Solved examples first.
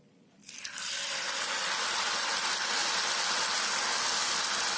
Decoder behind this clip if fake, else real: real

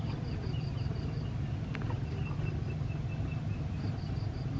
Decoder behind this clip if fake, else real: real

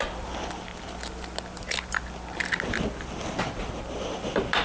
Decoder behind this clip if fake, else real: real